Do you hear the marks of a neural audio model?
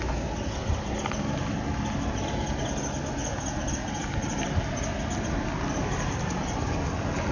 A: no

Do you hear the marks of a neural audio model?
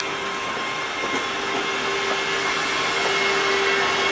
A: no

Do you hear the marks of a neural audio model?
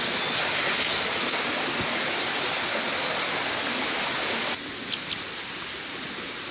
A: no